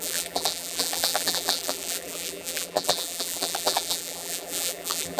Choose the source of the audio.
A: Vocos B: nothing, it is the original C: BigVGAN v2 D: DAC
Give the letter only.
C